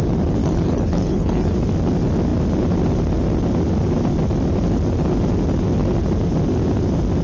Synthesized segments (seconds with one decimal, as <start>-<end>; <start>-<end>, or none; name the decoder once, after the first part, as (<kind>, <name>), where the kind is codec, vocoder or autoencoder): 0.4-1.5 (codec, HILCodec)